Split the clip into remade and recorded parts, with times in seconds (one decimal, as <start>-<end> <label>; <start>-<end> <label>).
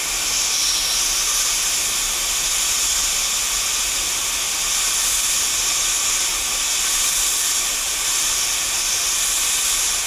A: 0.0-6.3 recorded; 6.3-7.7 remade; 7.7-10.1 recorded